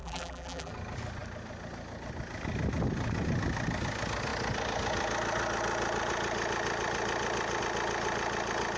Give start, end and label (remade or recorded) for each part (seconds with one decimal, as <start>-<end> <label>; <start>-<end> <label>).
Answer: 0.0-0.7 remade; 0.7-8.8 recorded